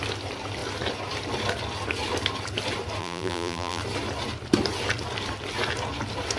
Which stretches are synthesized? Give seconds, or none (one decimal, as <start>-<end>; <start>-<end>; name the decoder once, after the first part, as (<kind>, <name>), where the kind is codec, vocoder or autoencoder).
3.0-3.8 (vocoder, BigVGAN v2)